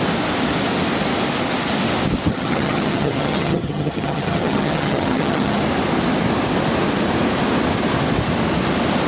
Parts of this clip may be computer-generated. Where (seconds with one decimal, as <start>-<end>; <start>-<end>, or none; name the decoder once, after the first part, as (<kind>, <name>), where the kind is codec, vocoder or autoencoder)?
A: 2.3-5.6 (vocoder, HiFi-GAN)